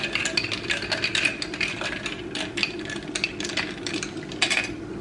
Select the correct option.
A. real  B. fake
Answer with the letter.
A